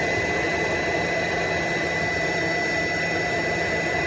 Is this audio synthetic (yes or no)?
no